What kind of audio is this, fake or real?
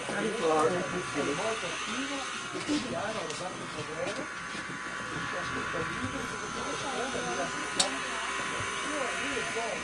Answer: real